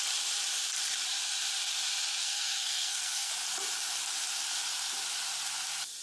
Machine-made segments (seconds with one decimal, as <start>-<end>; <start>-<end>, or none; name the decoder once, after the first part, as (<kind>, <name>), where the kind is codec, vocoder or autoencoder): 2.2-3.3 (codec, SNAC)